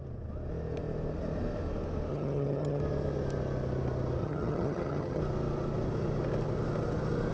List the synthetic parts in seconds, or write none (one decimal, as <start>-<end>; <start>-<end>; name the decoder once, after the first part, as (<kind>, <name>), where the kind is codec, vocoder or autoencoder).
2.1-2.8 (vocoder, HiFi-GAN); 4.2-5.2